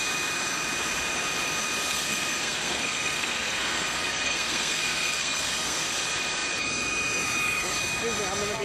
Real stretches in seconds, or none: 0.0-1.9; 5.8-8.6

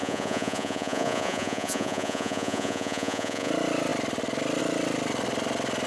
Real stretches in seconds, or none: 3.5-5.9

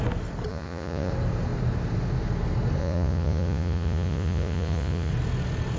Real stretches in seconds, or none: 0.0-0.5; 1.1-2.8; 5.1-5.8

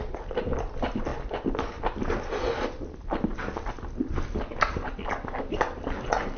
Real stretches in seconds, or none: 0.0-6.4

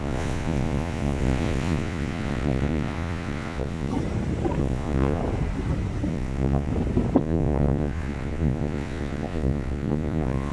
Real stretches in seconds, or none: 3.9-4.6; 5.2-6.1; 6.7-7.2

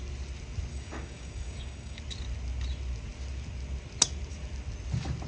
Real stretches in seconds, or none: 0.0-0.7; 2.0-5.3

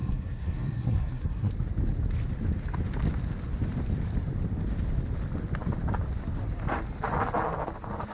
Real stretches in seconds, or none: 1.5-8.1